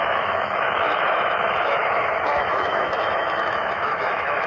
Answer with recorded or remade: remade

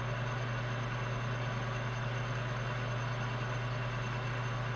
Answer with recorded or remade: recorded